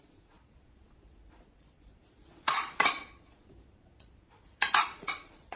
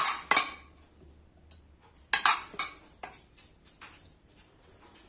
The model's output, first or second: first